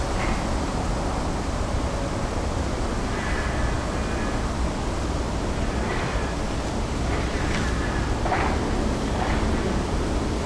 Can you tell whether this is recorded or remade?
recorded